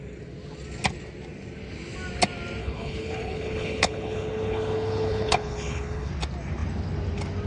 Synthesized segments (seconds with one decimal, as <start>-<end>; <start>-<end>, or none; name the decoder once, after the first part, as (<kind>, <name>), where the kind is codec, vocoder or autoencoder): 2.6-6.1 (codec, HILCodec)